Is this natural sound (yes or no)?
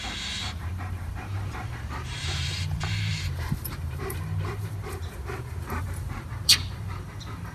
no